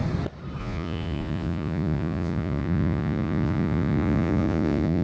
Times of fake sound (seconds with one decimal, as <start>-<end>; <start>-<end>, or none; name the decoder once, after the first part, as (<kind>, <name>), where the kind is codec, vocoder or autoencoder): 0.6-5.0 (vocoder, Vocos)